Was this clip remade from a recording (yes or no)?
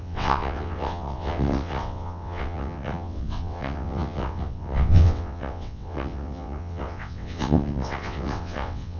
yes